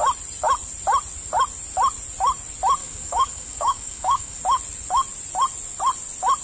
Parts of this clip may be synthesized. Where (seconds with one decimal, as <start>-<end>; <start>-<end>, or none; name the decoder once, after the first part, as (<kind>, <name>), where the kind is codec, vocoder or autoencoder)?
2.8-4.4 (codec, DAC)